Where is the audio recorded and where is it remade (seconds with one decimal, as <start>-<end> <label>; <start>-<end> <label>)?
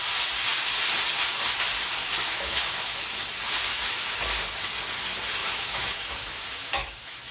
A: 0.0-2.0 recorded; 2.0-3.2 remade; 3.2-3.7 recorded; 3.7-4.2 remade; 4.2-5.4 recorded; 5.4-7.3 remade